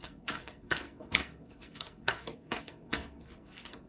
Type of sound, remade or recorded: remade